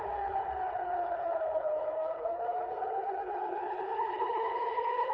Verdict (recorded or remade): remade